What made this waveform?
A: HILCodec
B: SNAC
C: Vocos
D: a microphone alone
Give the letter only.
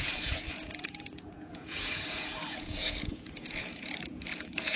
C